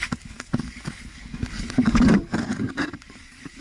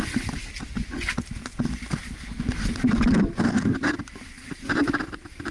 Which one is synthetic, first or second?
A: first